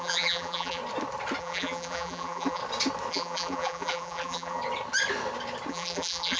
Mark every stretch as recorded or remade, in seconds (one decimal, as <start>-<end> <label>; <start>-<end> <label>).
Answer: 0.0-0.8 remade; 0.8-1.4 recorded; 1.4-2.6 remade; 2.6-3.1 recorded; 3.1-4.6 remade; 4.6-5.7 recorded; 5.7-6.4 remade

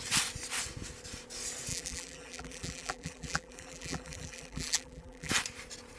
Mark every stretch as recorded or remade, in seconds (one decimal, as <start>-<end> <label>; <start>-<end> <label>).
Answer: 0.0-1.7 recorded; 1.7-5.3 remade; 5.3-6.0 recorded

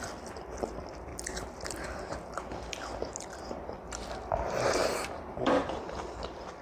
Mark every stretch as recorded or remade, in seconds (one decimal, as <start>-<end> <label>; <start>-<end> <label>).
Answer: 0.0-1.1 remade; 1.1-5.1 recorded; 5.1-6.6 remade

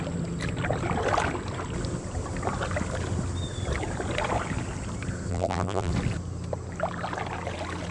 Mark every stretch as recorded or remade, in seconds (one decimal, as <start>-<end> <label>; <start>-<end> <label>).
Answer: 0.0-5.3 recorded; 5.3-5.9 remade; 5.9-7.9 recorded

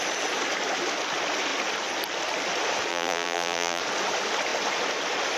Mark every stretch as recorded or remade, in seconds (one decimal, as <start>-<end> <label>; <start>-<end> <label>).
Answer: 0.0-2.9 recorded; 2.9-3.8 remade; 3.8-5.4 recorded

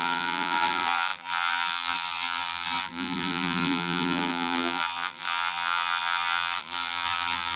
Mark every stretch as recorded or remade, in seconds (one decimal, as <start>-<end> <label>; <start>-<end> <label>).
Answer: 0.0-7.6 remade

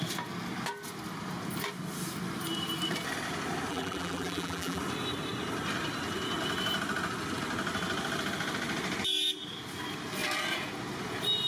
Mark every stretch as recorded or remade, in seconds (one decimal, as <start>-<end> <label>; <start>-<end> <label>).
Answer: 0.0-3.7 recorded; 3.7-4.8 remade; 4.8-11.5 recorded

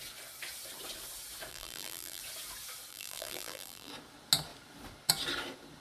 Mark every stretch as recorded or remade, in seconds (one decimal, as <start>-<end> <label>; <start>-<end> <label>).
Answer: 0.0-1.5 recorded; 1.5-2.2 remade; 2.2-2.9 recorded; 2.9-3.9 remade; 3.9-5.8 recorded